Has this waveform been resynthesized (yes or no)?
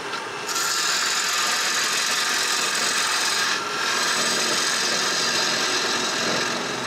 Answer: yes